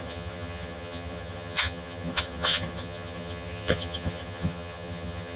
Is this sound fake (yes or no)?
yes